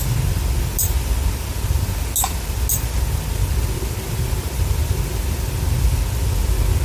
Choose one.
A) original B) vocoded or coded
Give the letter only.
A